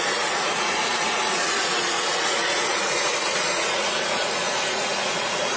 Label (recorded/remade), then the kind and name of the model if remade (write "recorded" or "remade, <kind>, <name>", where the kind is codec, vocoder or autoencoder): remade, vocoder, Vocos